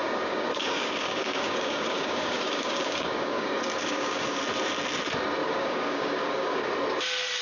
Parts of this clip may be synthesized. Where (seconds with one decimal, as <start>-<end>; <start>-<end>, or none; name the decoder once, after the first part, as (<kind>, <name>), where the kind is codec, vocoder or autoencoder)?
0.0-4.4 (codec, DAC); 5.4-6.7